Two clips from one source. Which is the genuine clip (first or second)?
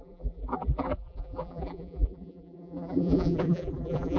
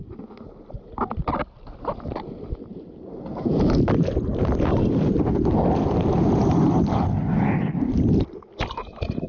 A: second